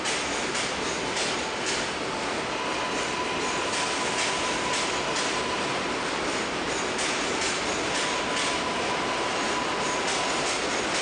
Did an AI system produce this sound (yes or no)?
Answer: no